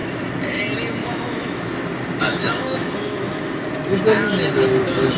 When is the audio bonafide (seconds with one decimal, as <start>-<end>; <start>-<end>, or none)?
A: 0.0-1.0; 1.6-2.3; 3.7-5.2